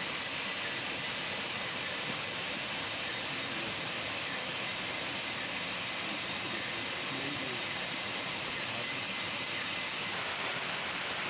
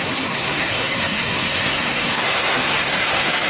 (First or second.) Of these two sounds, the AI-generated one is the second